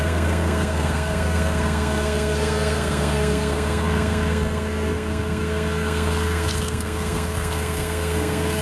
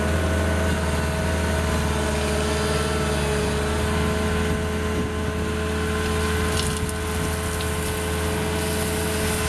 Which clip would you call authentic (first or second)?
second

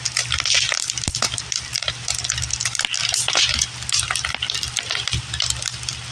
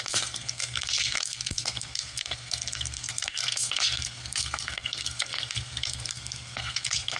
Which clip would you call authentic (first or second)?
first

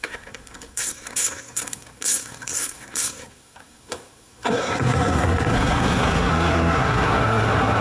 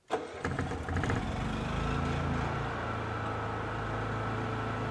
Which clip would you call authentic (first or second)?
second